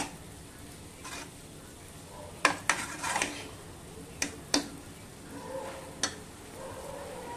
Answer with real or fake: real